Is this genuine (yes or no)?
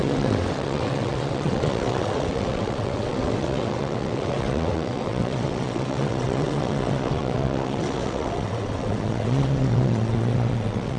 no